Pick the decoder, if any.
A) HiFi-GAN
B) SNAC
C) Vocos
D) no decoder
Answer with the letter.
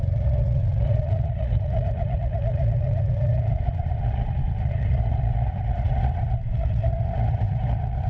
C